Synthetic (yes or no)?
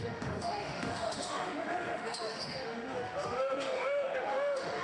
yes